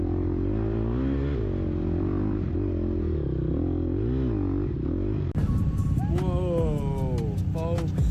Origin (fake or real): real